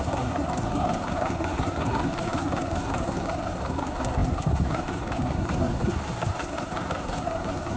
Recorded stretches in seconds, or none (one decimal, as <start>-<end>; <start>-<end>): none